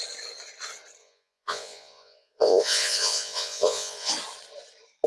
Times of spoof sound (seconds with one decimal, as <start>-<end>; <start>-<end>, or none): 1.0-4.1